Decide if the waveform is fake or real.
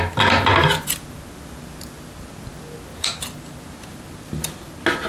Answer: real